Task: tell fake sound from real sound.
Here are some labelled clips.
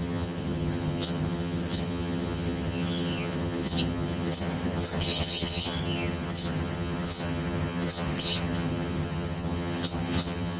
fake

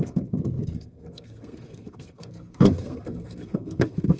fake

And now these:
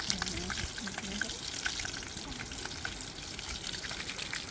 real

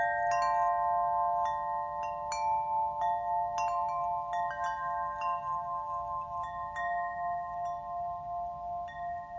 real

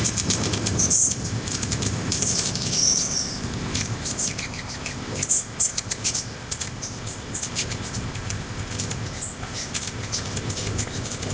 fake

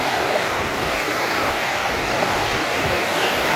fake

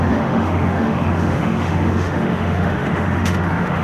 fake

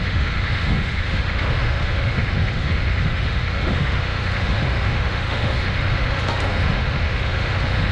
fake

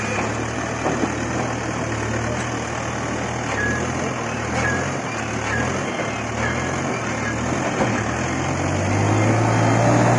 real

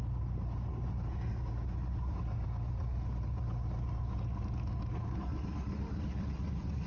real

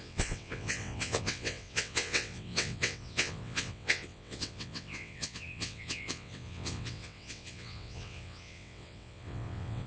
fake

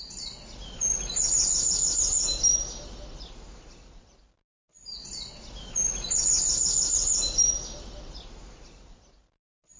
real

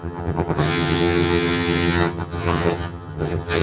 fake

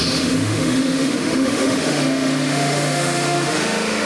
fake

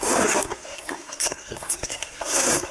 fake